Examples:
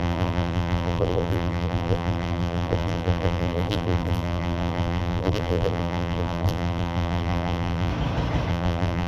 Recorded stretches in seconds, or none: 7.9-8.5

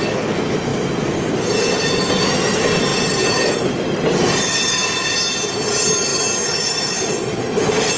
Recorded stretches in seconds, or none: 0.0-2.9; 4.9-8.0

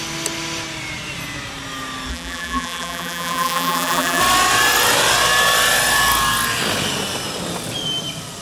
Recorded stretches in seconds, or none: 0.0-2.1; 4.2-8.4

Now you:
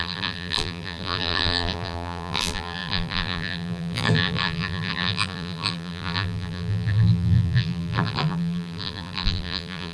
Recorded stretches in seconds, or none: none